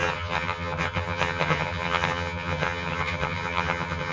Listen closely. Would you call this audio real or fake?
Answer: fake